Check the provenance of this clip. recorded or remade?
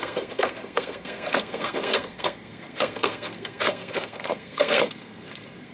remade